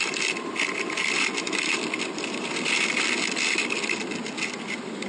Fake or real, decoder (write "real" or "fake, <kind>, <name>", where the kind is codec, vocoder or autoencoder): real